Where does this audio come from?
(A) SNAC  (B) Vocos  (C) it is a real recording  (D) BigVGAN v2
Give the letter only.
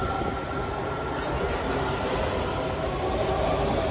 C